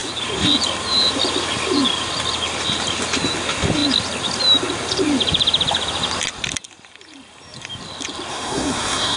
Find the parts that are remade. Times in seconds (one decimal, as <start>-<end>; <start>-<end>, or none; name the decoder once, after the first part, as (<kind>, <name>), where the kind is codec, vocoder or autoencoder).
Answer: 8.3-9.2 (codec, SNAC)